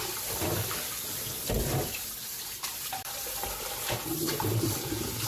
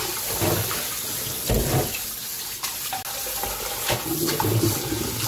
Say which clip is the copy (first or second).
first